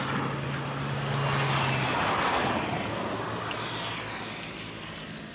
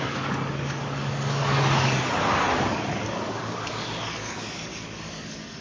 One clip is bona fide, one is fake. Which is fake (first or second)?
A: second